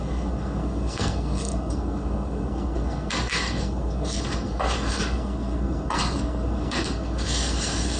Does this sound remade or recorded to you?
remade